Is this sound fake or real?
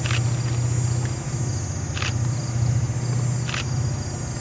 real